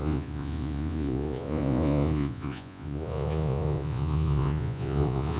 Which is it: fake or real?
fake